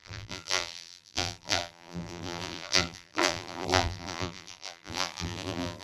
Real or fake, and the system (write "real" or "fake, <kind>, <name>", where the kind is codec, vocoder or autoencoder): fake, vocoder, BigVGAN v2